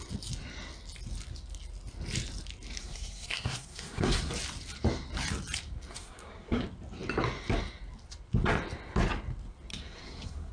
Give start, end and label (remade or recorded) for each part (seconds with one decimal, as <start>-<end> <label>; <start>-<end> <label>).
0.0-2.8 recorded; 2.8-4.3 remade; 4.3-5.9 recorded; 5.9-6.6 remade; 6.6-9.7 recorded; 9.7-10.5 remade